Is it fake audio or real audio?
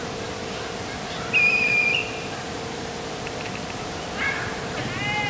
fake